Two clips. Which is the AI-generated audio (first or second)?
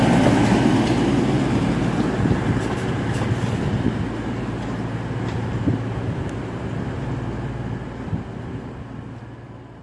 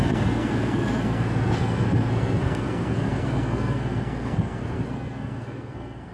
second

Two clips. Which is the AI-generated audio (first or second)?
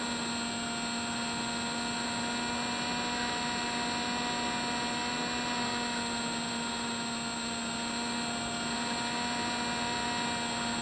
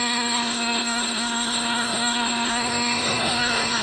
second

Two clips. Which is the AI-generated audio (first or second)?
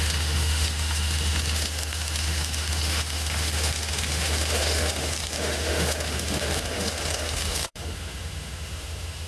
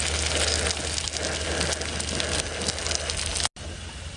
first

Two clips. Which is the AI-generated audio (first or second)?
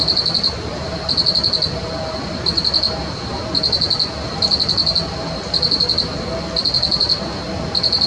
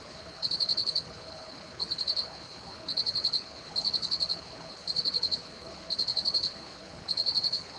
second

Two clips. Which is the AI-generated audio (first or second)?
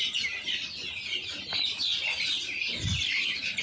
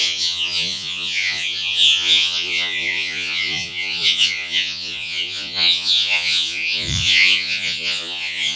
second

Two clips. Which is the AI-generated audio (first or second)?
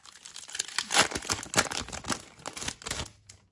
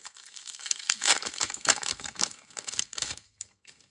second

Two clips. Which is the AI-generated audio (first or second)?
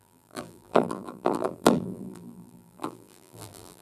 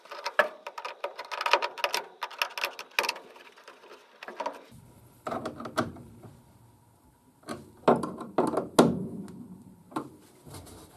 first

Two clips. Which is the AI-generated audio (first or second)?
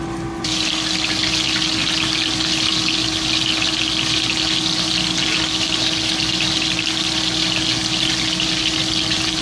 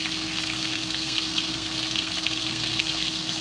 second